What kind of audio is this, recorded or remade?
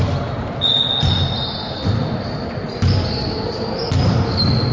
recorded